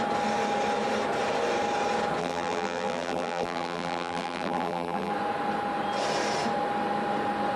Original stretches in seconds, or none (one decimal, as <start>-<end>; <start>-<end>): 0.0-2.2; 5.1-7.6